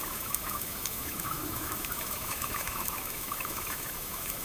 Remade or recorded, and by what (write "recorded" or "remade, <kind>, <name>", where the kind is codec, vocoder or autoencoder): remade, autoencoder, DAC-VAE